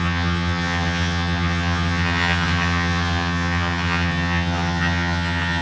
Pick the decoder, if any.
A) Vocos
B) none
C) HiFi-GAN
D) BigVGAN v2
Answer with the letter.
C